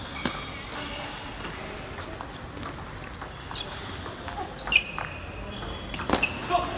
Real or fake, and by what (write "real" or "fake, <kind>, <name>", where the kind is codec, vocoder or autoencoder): real